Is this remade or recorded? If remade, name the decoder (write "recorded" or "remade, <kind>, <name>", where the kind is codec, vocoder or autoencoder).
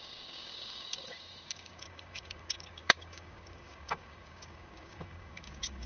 remade, codec, DAC